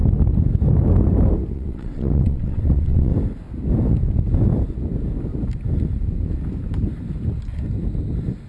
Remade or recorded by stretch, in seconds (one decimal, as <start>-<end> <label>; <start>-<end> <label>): 0.0-1.5 recorded; 1.5-3.1 remade; 3.1-8.5 recorded